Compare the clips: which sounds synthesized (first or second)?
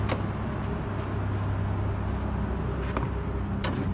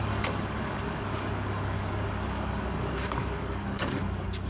second